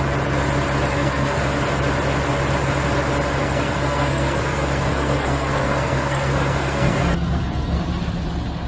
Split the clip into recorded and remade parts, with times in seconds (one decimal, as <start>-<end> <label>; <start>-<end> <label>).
0.0-0.9 recorded; 0.9-1.4 remade; 1.4-3.4 recorded; 3.4-7.8 remade; 7.8-8.7 recorded

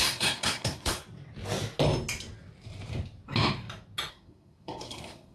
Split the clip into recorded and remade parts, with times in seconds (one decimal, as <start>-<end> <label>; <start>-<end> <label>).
0.0-1.0 remade; 1.0-4.1 recorded; 4.1-5.3 remade

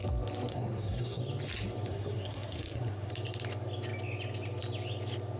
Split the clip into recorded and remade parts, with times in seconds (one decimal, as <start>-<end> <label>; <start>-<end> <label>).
0.0-0.5 recorded; 0.5-1.2 remade; 1.2-1.9 recorded; 1.9-3.1 remade; 3.1-5.4 recorded

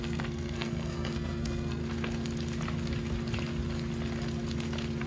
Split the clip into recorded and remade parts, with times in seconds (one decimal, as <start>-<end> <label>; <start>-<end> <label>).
0.0-1.8 remade; 1.8-5.1 recorded